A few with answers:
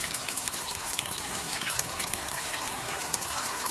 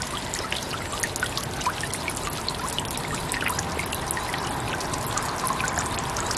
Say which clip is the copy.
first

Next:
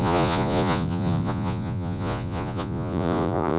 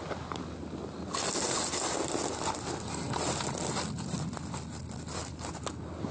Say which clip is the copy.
first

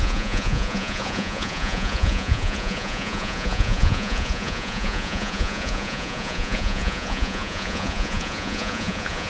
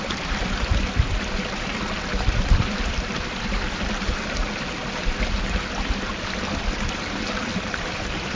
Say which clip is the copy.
first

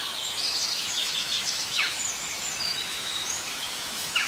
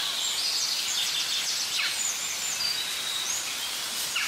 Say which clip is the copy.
first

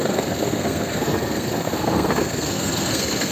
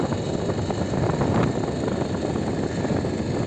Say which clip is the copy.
first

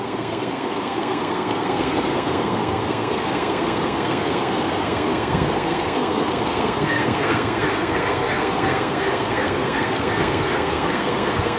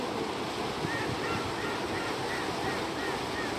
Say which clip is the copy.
first